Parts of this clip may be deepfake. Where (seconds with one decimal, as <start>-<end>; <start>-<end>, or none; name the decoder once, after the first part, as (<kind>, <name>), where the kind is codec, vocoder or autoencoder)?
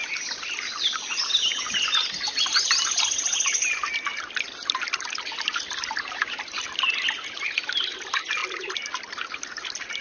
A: none